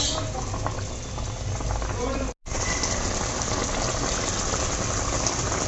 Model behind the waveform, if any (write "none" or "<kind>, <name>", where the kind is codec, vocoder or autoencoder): none